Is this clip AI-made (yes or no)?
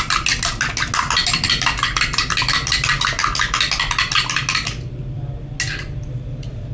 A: no